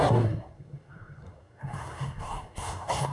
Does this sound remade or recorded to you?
remade